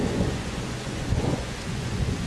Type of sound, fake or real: fake